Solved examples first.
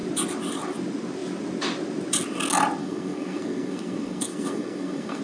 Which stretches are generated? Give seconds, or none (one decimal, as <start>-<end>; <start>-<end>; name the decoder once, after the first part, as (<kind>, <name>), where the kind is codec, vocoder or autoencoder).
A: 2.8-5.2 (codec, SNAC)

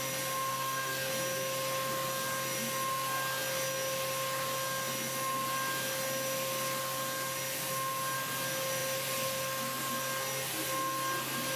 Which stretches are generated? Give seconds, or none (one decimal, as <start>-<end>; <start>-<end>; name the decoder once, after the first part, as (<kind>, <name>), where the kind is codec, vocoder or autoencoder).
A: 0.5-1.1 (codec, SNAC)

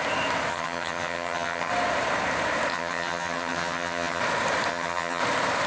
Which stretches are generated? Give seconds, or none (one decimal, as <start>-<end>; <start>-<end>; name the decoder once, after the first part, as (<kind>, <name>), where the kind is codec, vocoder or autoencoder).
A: 0.5-1.7 (vocoder, HiFi-GAN); 2.7-4.2; 4.7-5.2